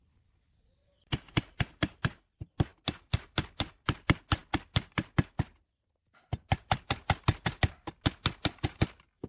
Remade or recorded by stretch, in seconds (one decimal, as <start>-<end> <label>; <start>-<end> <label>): 0.0-9.3 recorded